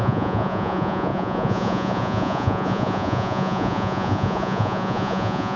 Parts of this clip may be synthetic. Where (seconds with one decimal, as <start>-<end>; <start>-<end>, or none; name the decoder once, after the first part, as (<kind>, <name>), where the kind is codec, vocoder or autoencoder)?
0.0-5.6 (vocoder, Vocos)